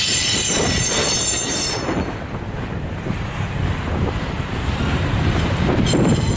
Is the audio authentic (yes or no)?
no